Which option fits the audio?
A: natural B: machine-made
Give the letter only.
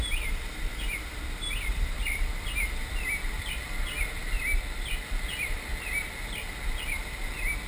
B